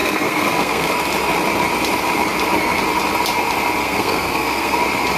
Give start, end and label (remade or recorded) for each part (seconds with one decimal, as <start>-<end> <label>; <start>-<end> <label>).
0.0-0.9 remade; 0.9-3.8 recorded; 3.8-4.8 remade; 4.8-5.2 recorded